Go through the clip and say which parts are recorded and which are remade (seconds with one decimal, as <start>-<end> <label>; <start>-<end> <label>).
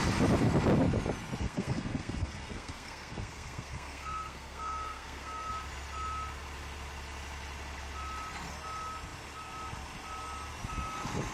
0.0-1.4 recorded; 1.4-5.5 remade; 5.5-11.3 recorded